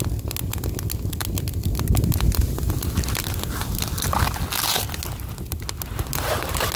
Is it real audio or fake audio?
real